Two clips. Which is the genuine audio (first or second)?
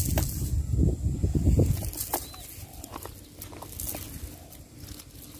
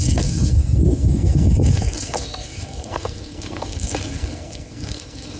first